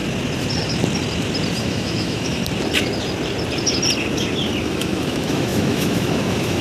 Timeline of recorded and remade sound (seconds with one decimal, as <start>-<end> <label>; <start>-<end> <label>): 0.0-1.6 recorded; 1.6-2.4 remade; 2.4-4.6 recorded; 4.6-6.6 remade